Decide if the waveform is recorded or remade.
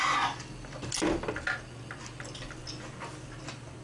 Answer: recorded